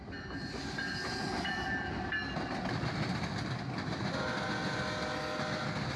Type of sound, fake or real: real